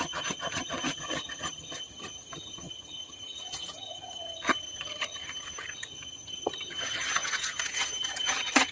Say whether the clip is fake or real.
fake